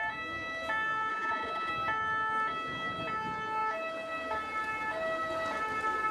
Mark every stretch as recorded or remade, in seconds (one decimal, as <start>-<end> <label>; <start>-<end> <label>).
0.0-1.1 recorded; 1.1-1.7 remade; 1.7-6.1 recorded